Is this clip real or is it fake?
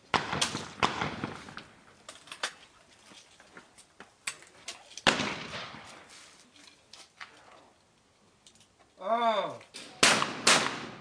real